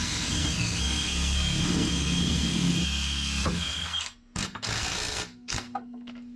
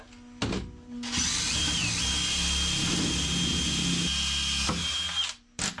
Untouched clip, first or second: second